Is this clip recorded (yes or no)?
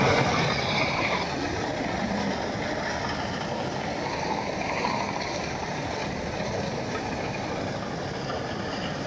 yes